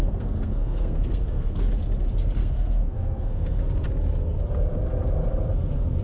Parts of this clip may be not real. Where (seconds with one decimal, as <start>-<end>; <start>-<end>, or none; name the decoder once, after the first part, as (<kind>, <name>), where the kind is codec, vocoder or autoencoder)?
0.0-1.6 (codec, SNAC); 2.4-3.6